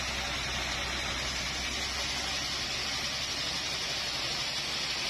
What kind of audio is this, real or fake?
real